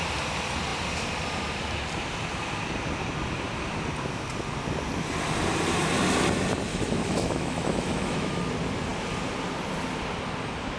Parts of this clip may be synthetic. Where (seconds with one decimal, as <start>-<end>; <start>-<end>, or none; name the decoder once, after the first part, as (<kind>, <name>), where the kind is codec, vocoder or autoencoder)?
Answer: 6.7-8.4 (autoencoder, DAC-VAE)